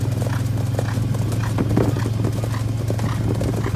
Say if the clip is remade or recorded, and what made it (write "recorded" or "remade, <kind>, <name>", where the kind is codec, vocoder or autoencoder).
recorded